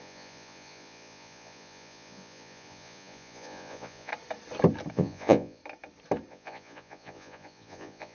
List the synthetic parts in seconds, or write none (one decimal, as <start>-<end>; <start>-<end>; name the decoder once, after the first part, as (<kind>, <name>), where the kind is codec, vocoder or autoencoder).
0.0-4.1 (vocoder, Vocos); 4.9-5.6; 6.3-8.1